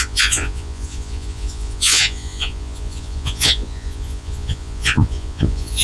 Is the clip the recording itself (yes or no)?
no